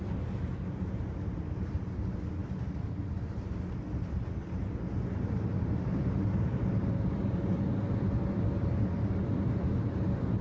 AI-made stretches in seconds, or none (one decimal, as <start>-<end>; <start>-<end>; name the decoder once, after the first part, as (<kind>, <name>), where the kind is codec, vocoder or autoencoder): none